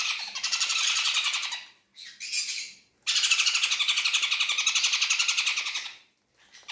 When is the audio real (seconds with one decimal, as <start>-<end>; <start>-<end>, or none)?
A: 1.1-5.1; 5.5-6.3